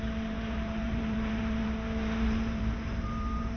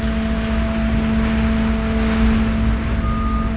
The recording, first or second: second